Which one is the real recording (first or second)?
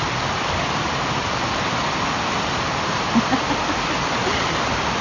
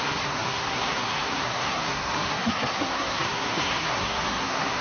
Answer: first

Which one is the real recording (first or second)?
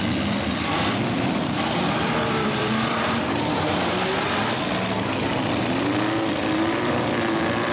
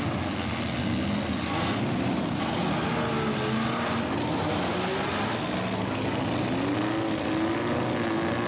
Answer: second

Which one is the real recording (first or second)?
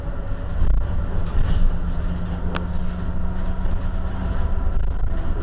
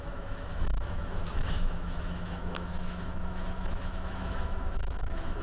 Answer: first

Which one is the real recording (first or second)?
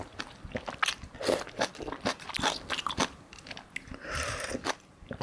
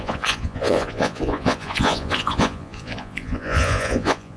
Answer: first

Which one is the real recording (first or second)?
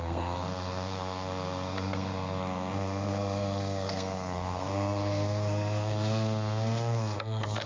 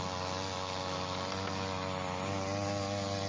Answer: second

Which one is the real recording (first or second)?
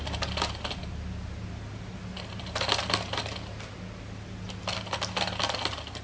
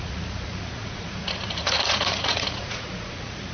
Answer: first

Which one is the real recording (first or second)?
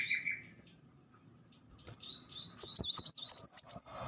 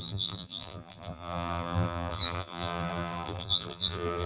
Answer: first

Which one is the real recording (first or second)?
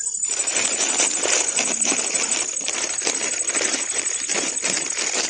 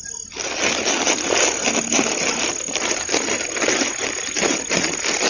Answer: second